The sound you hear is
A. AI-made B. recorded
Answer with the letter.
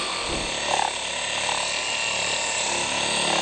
B